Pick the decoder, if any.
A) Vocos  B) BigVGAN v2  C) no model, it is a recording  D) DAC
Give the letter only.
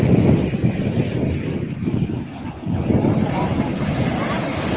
C